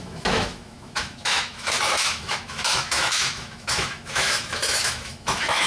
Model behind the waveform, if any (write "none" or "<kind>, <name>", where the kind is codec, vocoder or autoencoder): autoencoder, DAC-VAE